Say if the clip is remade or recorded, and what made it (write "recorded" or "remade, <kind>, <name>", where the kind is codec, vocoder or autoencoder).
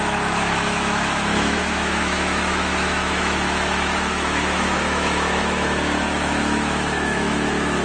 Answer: remade, autoencoder, DAC-VAE